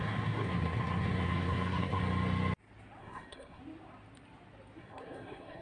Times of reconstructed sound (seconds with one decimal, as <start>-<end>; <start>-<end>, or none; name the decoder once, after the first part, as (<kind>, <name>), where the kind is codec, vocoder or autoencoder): 0.0-2.0 (codec, SNAC); 3.0-3.6; 4.8-5.6